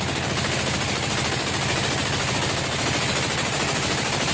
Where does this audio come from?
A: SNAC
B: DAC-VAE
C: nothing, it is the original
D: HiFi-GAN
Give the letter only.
C